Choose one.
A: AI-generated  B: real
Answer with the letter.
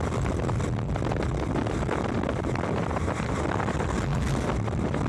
B